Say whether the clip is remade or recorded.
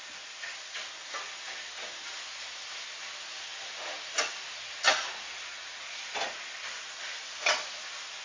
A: recorded